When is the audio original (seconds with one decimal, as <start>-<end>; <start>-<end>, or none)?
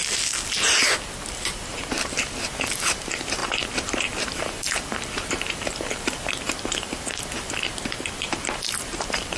0.0-1.3